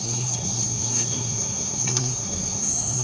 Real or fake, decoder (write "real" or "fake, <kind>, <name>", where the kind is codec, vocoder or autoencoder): fake, codec, SNAC